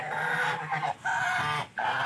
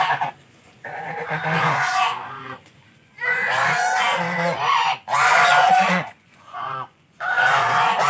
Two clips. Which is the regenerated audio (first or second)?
second